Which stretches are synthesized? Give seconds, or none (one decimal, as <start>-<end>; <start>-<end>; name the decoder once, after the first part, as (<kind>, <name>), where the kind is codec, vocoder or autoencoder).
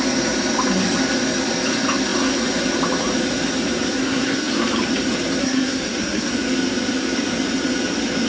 4.0-4.5 (codec, SNAC); 5.4-6.3